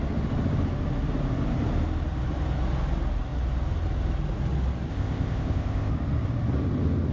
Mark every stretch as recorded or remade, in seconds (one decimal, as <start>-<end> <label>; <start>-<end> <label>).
0.0-4.9 recorded; 4.9-5.9 remade; 5.9-7.1 recorded